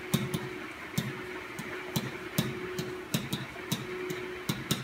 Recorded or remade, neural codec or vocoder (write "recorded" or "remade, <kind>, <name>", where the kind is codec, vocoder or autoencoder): recorded